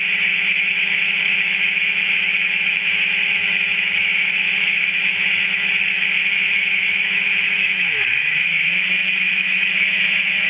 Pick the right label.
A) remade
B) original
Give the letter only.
A